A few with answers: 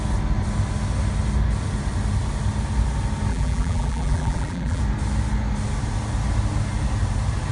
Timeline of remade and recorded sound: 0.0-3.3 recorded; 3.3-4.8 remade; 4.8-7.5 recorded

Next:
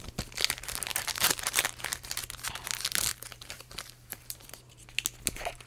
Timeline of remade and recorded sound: 0.0-0.9 recorded; 0.9-2.1 remade; 2.1-3.1 recorded; 3.1-4.8 remade; 4.8-5.7 recorded

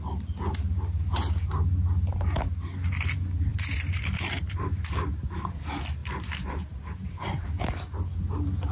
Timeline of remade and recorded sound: 0.0-3.5 recorded; 3.5-5.0 remade; 5.0-6.0 recorded; 6.0-7.6 remade; 7.6-8.7 recorded